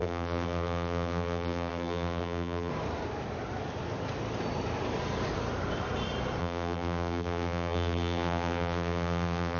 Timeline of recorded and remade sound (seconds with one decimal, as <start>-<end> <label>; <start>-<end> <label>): 0.0-2.7 remade; 2.7-6.4 recorded; 6.4-9.6 remade